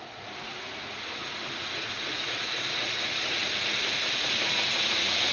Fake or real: fake